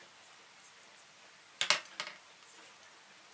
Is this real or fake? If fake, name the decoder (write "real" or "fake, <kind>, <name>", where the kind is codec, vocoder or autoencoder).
real